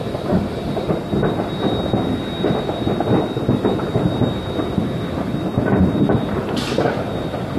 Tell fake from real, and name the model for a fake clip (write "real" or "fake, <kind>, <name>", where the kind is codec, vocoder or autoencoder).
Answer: real